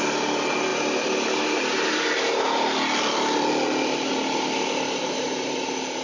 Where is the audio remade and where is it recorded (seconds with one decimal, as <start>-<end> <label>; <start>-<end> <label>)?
0.0-6.0 recorded